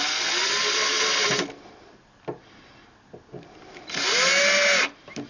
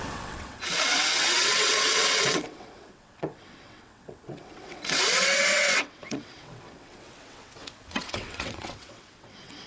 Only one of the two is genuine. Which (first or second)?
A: first